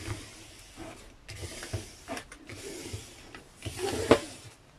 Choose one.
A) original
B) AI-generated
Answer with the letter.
B